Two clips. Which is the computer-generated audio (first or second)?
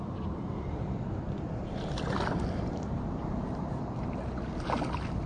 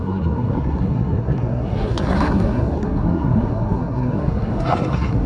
second